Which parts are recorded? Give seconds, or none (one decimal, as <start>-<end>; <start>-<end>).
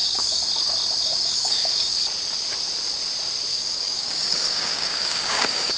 0.5-1.1; 2.0-3.5